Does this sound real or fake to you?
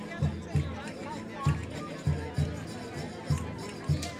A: real